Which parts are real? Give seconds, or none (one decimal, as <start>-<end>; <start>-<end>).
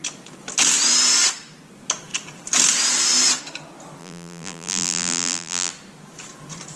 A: 0.0-4.0; 5.7-6.8